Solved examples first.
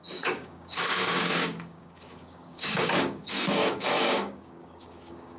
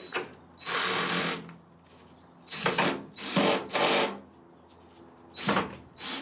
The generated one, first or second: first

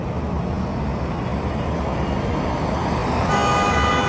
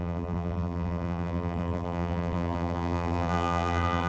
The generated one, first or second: second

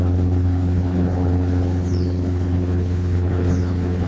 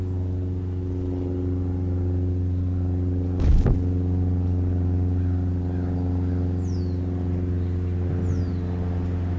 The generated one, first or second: first